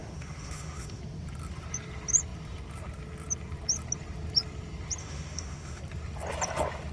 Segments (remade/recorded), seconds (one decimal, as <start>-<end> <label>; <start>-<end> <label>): 0.0-1.0 remade; 1.0-5.0 recorded; 5.0-5.8 remade; 5.8-6.9 recorded